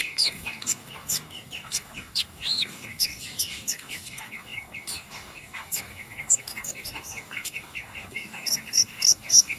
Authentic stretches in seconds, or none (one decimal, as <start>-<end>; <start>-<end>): none